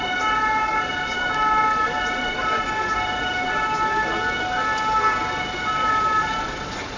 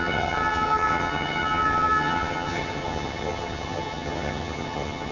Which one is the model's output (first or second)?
second